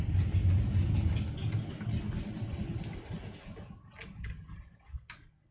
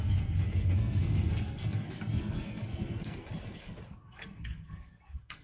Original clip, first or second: first